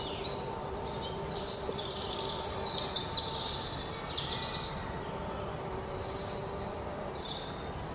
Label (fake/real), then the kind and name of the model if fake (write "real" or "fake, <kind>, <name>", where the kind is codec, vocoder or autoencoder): real